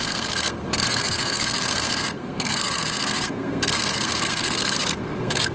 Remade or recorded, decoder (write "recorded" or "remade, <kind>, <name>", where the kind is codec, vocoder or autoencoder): remade, codec, SNAC